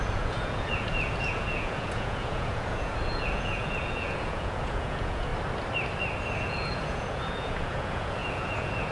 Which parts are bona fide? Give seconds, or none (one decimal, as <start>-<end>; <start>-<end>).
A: 5.3-6.4

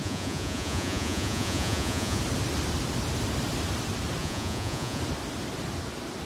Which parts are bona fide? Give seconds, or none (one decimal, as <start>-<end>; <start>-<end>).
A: 2.2-4.2; 5.0-6.2

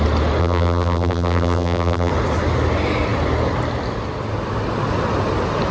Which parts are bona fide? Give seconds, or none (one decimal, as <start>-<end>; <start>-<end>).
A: 0.0-0.4; 2.1-5.7

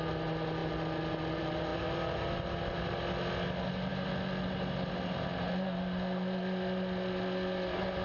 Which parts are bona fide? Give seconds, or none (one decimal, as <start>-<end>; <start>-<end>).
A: 0.0-8.0

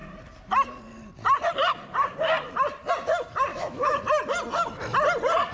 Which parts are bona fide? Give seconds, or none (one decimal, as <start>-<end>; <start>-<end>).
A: 0.0-3.5; 4.0-5.5

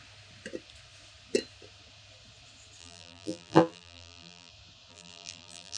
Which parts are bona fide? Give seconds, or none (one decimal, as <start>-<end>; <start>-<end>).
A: 0.0-2.8; 4.5-4.9